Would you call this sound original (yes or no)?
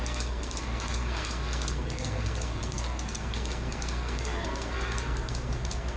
no